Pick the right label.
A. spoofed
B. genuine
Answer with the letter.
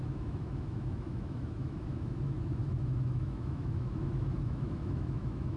A